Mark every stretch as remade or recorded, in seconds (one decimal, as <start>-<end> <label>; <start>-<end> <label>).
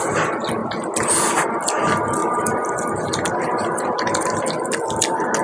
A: 0.0-2.2 recorded; 2.2-4.4 remade; 4.4-5.4 recorded